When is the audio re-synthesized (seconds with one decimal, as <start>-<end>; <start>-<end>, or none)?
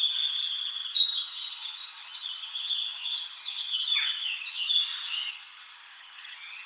0.0-4.8; 5.3-6.7